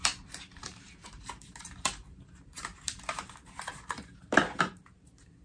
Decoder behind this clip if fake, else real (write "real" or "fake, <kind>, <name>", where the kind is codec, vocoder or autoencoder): fake, vocoder, BigVGAN v2